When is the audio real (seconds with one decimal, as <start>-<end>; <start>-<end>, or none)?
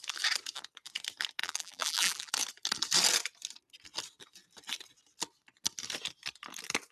0.0-1.4; 2.3-6.9